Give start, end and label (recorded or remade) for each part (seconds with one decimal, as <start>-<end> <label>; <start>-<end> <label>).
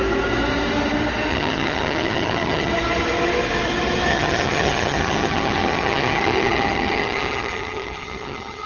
0.0-1.3 recorded; 1.3-2.7 remade; 2.7-4.1 recorded; 4.1-8.7 remade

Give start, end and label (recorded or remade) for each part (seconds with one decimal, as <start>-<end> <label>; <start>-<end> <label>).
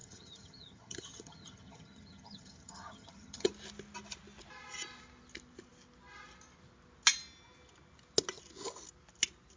0.0-3.5 remade; 3.5-9.6 recorded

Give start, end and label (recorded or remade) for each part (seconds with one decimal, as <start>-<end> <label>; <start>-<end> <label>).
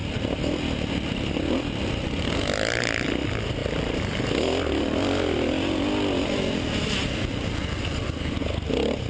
0.0-9.1 recorded